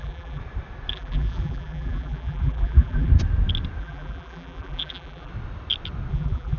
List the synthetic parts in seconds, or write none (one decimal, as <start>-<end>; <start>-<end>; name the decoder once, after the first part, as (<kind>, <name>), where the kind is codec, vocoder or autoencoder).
0.0-0.4 (vocoder, BigVGAN v2); 0.9-3.1; 3.8-5.3; 6.1-6.6